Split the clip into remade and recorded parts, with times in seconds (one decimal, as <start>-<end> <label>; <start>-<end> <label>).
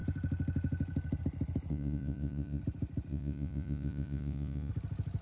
0.0-1.7 recorded; 1.7-2.6 remade; 2.6-3.1 recorded; 3.1-4.7 remade; 4.7-5.2 recorded